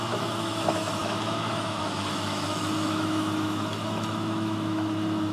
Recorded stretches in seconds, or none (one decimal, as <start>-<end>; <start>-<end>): none